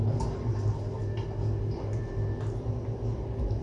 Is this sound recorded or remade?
recorded